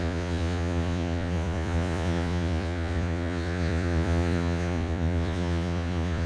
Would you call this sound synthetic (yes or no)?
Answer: yes